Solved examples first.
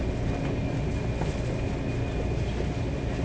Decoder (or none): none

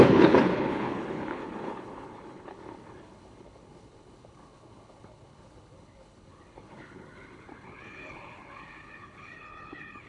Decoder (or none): codec, HILCodec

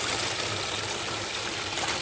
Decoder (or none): none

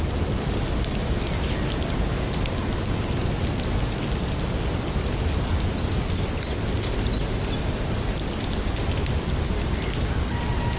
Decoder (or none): none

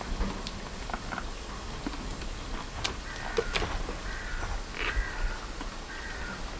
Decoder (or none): none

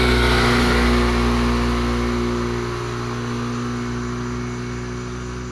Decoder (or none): none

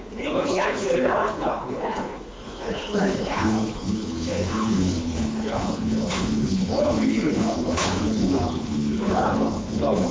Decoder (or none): codec, HILCodec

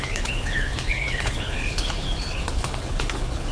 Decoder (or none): codec, HILCodec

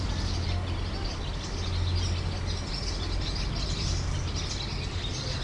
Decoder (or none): none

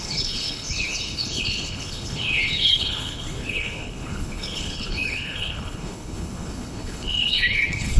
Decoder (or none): codec, HILCodec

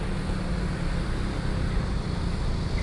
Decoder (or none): none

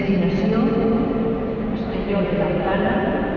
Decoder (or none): none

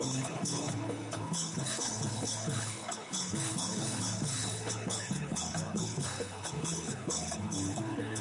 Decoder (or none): codec, HILCodec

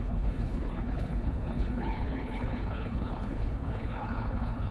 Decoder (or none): codec, HILCodec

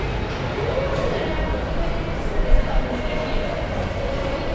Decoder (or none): none